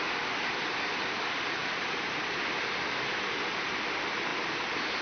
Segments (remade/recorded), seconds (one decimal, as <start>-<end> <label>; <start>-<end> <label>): 0.0-5.0 recorded